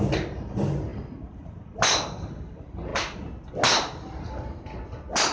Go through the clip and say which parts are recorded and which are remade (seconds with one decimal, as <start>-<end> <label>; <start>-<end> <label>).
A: 0.0-5.3 recorded